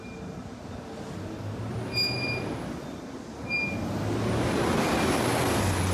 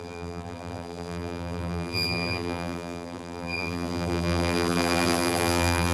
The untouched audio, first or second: first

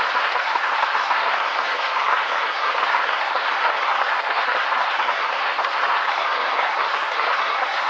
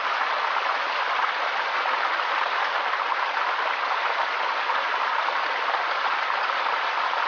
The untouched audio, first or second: second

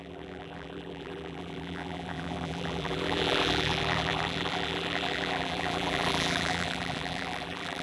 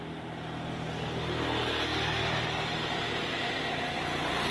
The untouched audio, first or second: second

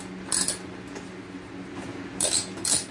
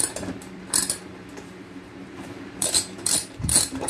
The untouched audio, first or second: first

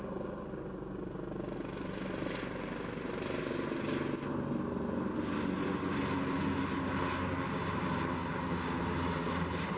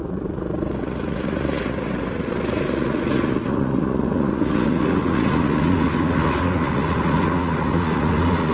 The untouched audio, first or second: first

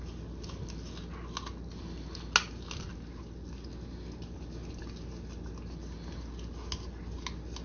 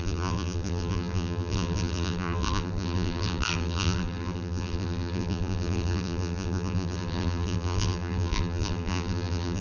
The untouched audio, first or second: first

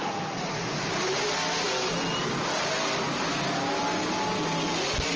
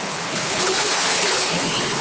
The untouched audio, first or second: first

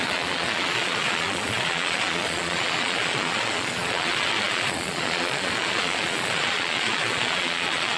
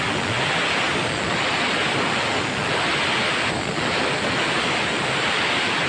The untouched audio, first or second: second